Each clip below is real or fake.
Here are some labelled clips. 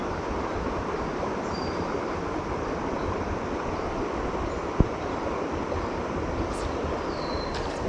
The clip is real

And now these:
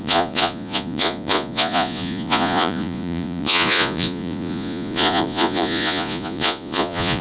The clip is fake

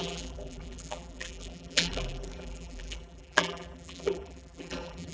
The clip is fake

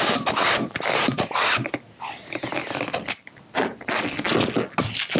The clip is real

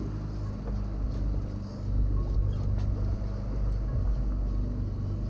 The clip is real